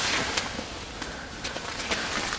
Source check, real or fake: real